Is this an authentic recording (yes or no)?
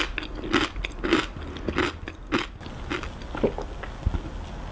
yes